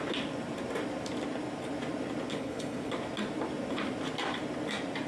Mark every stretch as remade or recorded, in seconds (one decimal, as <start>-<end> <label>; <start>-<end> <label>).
0.0-2.3 recorded; 2.3-2.9 remade; 2.9-5.1 recorded